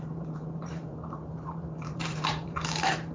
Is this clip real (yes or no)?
no